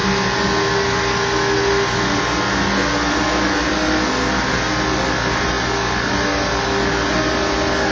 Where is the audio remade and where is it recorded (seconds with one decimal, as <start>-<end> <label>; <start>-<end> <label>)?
0.0-7.9 recorded